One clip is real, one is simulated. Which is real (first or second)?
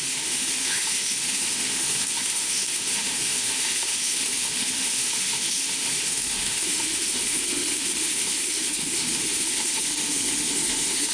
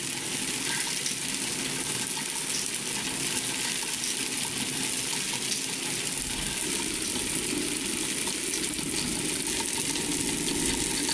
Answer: second